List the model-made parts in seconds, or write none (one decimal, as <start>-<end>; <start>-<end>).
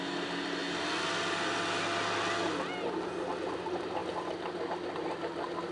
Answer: 4.0-4.9